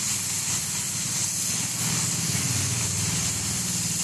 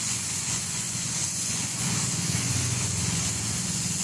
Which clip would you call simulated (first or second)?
second